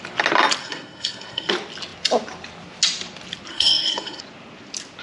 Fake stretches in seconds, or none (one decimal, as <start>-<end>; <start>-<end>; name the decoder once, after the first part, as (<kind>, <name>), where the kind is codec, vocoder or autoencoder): 0.6-1.5 (codec, SNAC); 3.5-4.2